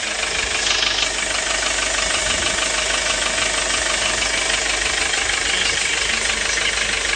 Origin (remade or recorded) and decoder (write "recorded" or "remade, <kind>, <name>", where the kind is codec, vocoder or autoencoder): recorded